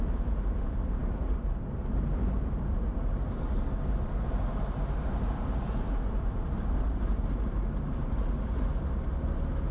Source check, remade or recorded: remade